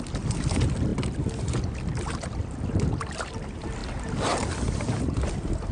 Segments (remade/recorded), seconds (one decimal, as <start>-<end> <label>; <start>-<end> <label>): 0.0-5.7 recorded